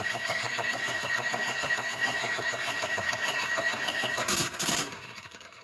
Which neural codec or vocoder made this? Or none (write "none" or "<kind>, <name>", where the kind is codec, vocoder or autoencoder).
codec, SNAC